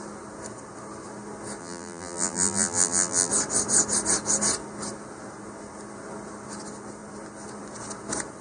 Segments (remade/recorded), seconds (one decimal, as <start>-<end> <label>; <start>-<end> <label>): 0.0-1.6 recorded; 1.6-3.3 remade; 3.3-8.4 recorded